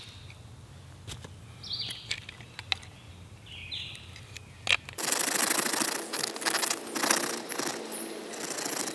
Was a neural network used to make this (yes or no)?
no